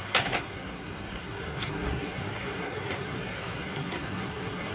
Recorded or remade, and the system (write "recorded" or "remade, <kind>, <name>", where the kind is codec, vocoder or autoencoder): remade, codec, SNAC